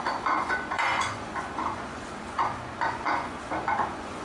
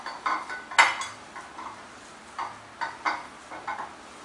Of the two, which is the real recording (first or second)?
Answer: second